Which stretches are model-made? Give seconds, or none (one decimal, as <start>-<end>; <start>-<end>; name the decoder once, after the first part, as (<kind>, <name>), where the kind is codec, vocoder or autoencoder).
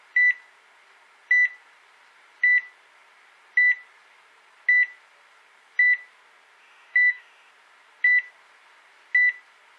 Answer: 6.6-7.5 (autoencoder, DAC-VAE)